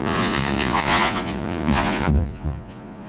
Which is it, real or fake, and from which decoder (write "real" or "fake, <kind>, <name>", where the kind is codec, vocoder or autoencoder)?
fake, vocoder, Vocos